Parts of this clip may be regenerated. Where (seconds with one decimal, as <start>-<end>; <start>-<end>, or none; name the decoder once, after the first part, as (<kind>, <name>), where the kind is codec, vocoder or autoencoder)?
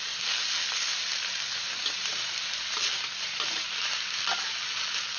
0.9-3.9 (vocoder, BigVGAN v2)